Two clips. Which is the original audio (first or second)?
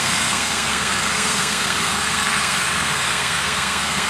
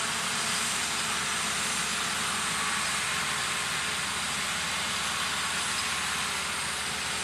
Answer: second